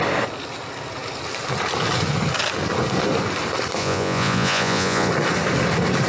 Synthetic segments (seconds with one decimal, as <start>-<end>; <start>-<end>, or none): 3.8-5.1